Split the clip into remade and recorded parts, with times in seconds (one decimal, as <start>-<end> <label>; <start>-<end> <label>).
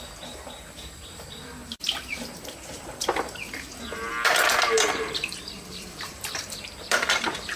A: 0.0-7.6 remade